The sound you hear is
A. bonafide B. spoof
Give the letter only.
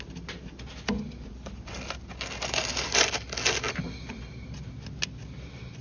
A